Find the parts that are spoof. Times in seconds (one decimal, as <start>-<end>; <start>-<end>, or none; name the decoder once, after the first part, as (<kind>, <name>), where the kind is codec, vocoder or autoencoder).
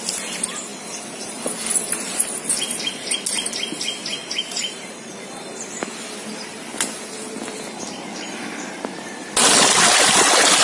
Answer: 4.2-5.5 (vocoder, BigVGAN v2)